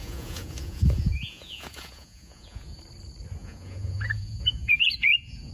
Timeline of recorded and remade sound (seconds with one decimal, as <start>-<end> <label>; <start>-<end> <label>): 0.0-2.8 remade; 2.8-3.4 recorded; 3.4-5.5 remade